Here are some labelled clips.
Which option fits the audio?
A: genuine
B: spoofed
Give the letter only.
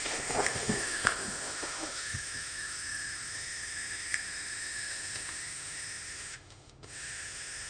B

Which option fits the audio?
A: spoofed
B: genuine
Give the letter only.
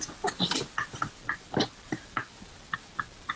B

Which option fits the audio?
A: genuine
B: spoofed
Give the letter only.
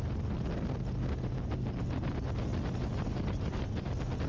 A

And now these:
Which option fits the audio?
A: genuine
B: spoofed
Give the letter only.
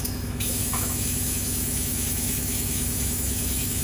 B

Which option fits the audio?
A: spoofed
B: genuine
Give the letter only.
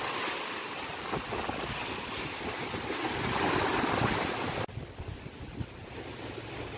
B